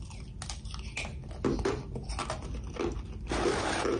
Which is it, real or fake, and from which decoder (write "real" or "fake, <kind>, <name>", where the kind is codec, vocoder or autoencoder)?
real